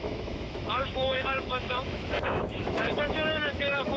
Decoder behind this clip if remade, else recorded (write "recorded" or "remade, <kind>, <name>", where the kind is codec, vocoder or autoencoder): remade, autoencoder, DAC-VAE